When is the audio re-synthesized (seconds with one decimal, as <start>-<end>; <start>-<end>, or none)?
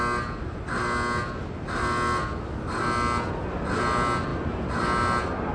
none